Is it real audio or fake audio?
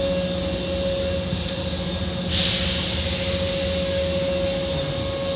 real